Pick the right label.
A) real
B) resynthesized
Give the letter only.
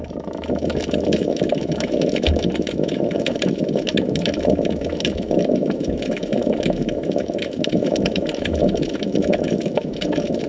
B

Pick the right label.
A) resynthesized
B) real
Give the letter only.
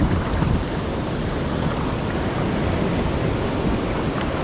B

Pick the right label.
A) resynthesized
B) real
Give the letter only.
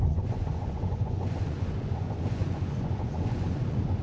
A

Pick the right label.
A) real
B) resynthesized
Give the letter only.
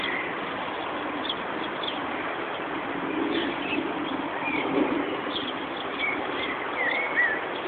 A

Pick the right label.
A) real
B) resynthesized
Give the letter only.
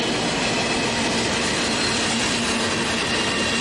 A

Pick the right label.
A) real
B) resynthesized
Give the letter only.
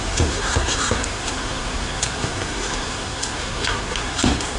B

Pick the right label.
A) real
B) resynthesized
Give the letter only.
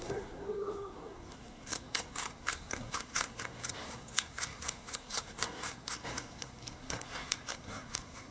B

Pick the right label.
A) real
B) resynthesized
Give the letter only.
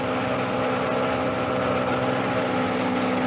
A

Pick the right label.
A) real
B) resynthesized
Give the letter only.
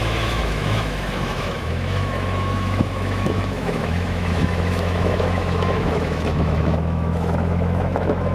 B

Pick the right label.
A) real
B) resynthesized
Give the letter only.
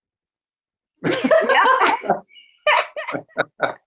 A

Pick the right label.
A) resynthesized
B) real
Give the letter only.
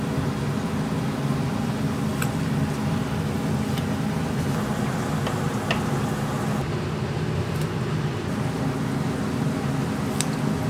B